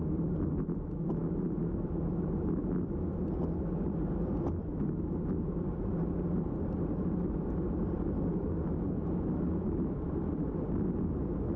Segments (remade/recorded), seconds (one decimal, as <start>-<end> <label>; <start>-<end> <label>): 0.0-11.6 recorded